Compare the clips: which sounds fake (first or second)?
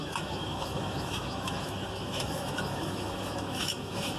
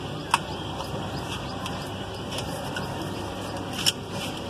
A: first